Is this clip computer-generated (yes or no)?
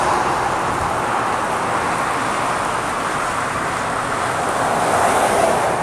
no